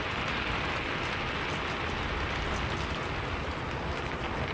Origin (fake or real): real